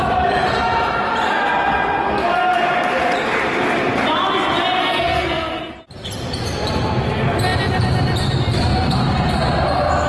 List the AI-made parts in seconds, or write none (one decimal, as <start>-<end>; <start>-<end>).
4.8-5.6